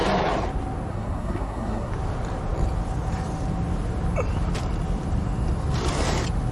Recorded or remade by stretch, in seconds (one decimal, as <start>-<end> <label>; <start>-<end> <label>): 0.0-0.9 recorded; 0.9-1.9 remade; 1.9-6.5 recorded